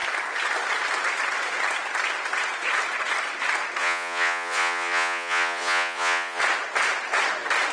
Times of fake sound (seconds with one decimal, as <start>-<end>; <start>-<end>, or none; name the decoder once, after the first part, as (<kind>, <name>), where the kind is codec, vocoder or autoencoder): 3.8-6.4 (vocoder, Vocos)